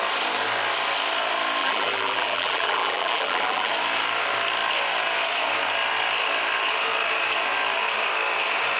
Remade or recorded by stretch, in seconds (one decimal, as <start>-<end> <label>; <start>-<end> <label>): 0.0-1.6 recorded; 1.6-3.7 remade; 3.7-8.8 recorded